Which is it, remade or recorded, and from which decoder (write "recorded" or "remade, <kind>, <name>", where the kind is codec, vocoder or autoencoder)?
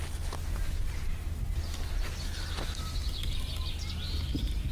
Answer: recorded